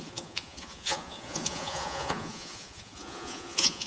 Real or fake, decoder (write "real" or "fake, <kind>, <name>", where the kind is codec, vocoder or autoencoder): fake, vocoder, Vocos